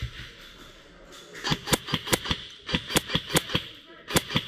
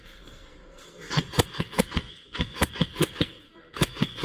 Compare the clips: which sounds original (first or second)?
first